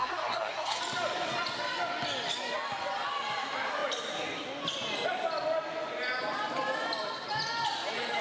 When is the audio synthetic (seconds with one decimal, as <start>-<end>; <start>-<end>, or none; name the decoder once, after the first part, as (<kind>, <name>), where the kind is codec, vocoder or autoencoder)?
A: 0.0-0.8 (codec, SNAC)